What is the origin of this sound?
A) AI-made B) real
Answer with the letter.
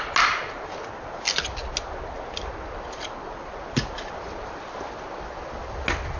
B